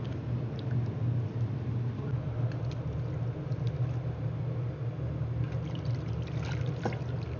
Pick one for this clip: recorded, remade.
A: recorded